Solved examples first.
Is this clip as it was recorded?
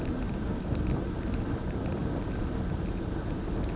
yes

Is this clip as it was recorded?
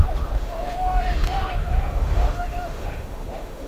no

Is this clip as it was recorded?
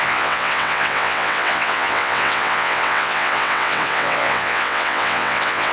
no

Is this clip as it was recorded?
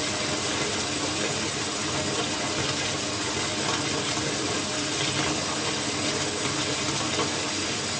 yes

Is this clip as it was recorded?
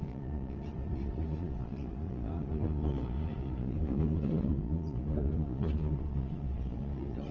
no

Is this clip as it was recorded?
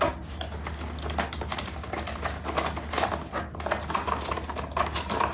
yes